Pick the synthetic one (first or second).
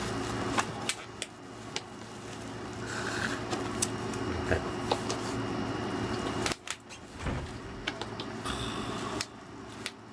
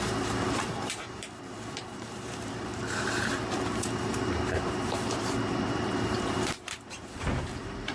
second